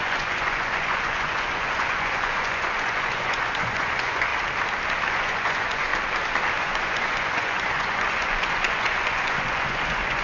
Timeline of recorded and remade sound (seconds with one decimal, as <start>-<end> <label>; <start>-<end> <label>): 0.0-4.3 remade; 4.3-5.1 recorded; 5.1-5.9 remade; 5.9-6.6 recorded; 6.6-10.2 remade